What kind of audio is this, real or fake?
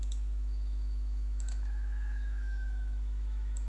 fake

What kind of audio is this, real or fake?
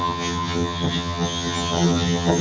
fake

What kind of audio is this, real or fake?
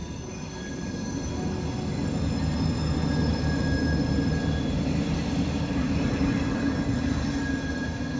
real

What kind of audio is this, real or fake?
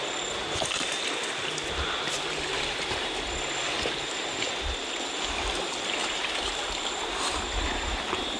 real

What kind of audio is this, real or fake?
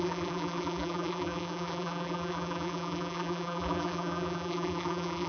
fake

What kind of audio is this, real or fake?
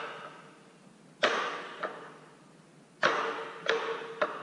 real